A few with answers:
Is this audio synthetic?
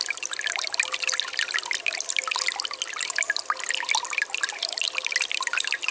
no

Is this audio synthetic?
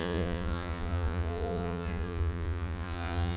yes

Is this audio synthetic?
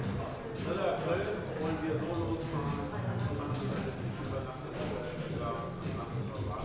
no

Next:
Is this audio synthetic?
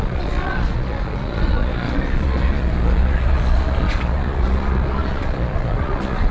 yes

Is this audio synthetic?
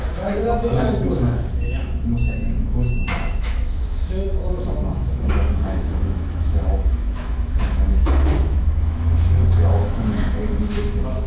yes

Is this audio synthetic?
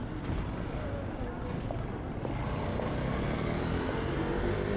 no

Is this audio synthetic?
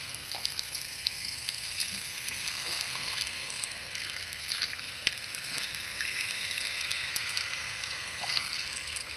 yes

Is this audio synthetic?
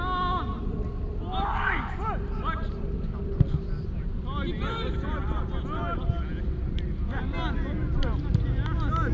no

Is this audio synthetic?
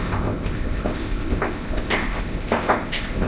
yes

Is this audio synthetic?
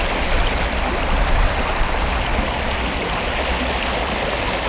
no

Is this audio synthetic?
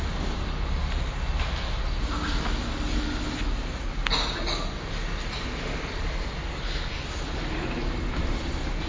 no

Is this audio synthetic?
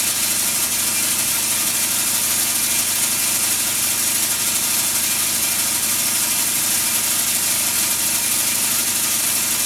no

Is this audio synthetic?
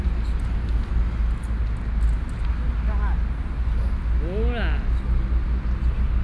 no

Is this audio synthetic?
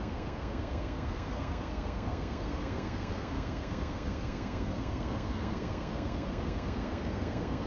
yes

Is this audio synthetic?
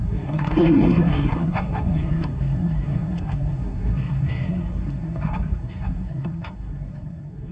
yes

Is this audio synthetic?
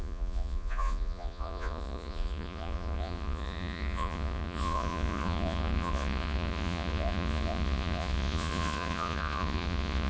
yes